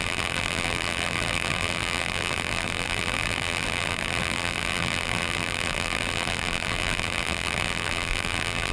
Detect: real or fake fake